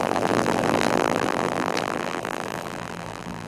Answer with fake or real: fake